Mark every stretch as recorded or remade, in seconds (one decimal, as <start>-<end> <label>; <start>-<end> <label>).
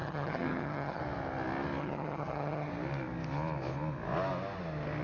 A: 0.0-1.0 remade; 1.0-1.8 recorded; 1.8-2.7 remade; 2.7-5.0 recorded